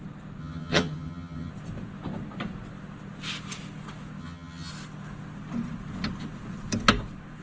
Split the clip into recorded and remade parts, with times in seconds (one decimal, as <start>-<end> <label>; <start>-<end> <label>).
0.0-0.4 recorded; 0.4-1.5 remade; 1.5-4.2 recorded; 4.2-4.7 remade; 4.7-7.4 recorded